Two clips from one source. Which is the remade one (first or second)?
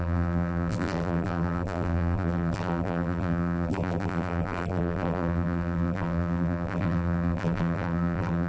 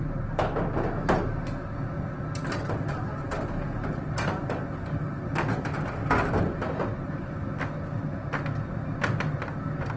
first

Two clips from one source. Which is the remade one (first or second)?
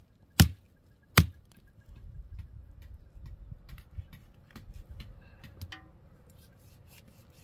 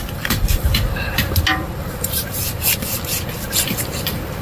second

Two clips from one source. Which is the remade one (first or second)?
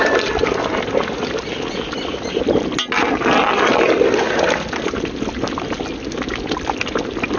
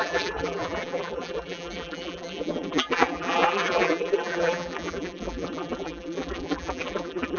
second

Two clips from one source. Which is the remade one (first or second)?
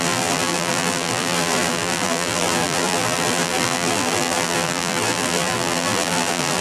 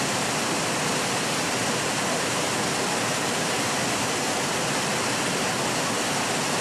first